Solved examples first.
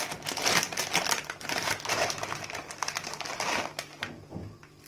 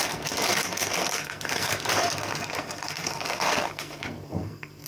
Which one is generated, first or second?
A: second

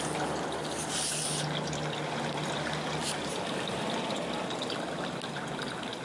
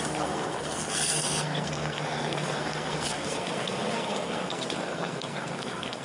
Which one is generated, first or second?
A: second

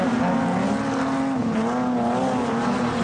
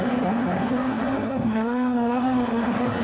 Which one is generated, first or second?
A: second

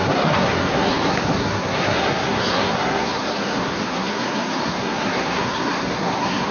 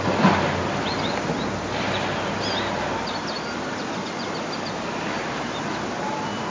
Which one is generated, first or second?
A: first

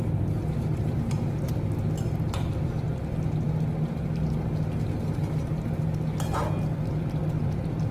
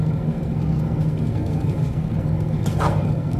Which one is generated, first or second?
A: second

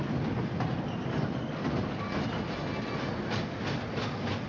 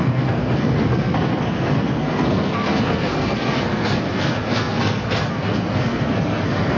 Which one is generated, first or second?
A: second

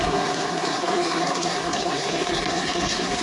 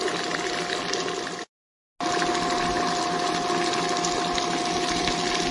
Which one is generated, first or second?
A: first